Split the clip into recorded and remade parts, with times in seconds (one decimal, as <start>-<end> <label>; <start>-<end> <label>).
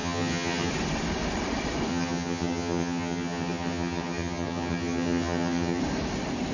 0.0-0.7 remade; 0.7-1.9 recorded; 1.9-5.8 remade; 5.8-6.5 recorded